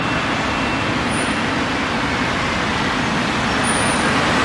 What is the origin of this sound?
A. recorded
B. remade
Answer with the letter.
A